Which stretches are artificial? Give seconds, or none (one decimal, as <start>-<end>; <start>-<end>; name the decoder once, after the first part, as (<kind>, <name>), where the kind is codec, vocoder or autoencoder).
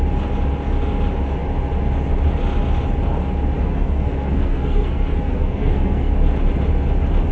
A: 3.6-6.1 (codec, SNAC)